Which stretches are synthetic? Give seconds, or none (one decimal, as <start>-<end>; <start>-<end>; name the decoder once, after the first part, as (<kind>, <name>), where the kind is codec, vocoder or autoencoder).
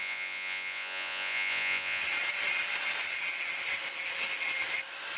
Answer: 0.0-2.0 (vocoder, Vocos)